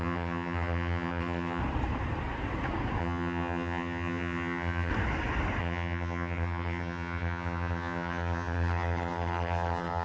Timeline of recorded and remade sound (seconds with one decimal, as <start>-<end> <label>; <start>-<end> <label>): 0.0-1.6 remade; 1.6-3.0 recorded; 3.0-4.9 remade; 4.9-5.6 recorded; 5.6-10.0 remade